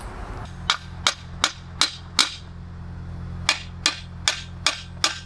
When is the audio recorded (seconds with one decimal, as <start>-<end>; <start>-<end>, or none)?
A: 0.0-5.3